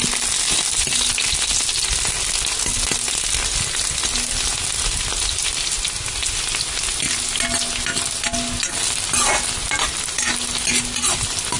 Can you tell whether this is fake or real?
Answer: real